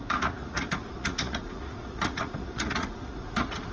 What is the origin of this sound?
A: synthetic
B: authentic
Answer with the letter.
A